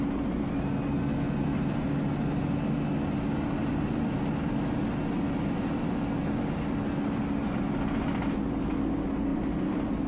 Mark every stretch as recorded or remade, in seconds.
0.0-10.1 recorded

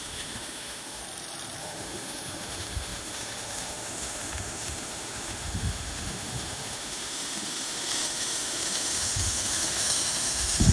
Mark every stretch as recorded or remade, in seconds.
0.0-1.0 remade; 1.0-1.6 recorded; 1.6-10.7 remade

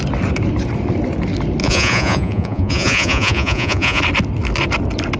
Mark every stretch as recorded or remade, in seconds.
0.0-1.6 recorded; 1.6-4.0 remade; 4.0-5.2 recorded

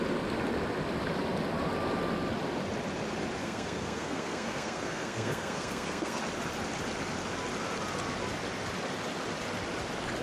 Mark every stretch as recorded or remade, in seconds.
0.0-3.4 recorded; 3.4-6.2 remade; 6.2-10.2 recorded

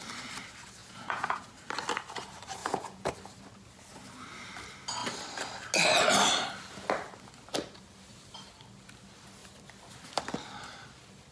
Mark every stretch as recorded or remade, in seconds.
0.0-0.8 recorded; 0.8-1.5 remade; 1.5-2.6 recorded; 2.6-3.1 remade; 3.1-11.3 recorded